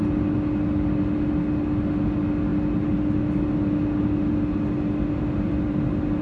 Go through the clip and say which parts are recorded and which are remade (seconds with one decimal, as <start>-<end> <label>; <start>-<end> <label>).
0.0-6.2 recorded